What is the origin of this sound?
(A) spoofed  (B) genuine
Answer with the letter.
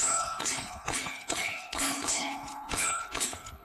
A